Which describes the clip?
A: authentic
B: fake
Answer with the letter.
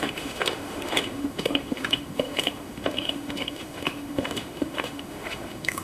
B